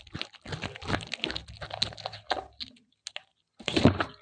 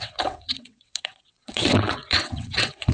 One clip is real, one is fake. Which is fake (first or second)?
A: second